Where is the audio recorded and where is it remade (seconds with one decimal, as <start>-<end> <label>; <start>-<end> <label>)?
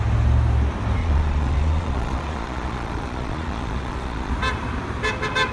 0.0-1.0 recorded; 1.0-4.3 remade; 4.3-5.5 recorded